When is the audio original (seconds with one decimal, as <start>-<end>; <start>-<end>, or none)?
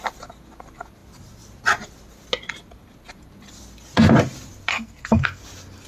0.0-4.7; 5.4-5.9